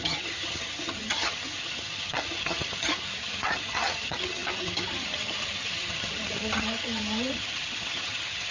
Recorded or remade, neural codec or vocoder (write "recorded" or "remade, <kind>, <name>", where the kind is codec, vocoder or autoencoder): remade, vocoder, HiFi-GAN